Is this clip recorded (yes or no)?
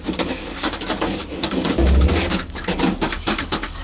no